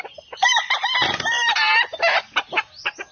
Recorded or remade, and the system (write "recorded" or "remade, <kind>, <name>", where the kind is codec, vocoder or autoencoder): recorded